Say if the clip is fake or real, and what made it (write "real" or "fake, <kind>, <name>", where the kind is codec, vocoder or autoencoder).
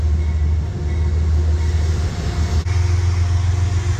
real